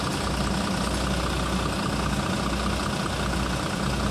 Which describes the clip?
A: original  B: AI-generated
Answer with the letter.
A